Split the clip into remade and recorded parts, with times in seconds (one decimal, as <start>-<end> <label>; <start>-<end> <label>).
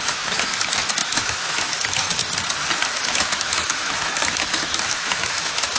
0.0-2.2 remade; 2.2-3.1 recorded; 3.1-5.8 remade